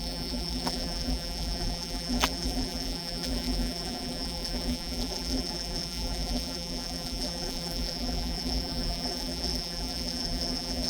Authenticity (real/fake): fake